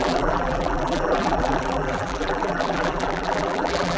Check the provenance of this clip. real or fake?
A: fake